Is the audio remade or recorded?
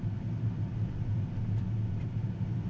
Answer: recorded